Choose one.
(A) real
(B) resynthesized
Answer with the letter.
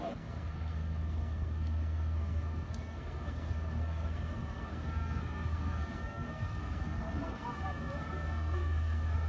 B